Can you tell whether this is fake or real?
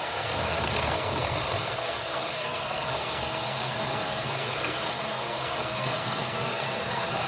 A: fake